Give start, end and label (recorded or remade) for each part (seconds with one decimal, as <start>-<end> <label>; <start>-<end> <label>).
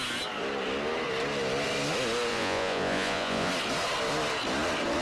0.0-2.3 recorded; 2.3-3.5 remade; 3.5-5.0 recorded